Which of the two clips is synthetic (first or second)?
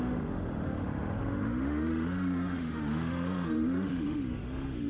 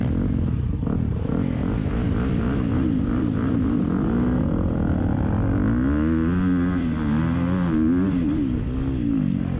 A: first